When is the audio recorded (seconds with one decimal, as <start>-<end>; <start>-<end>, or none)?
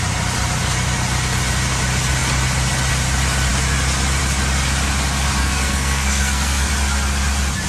0.0-5.4; 6.7-7.7